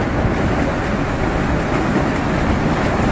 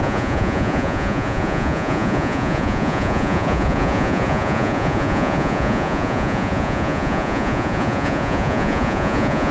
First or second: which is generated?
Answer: second